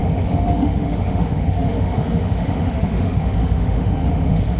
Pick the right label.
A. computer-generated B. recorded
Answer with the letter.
A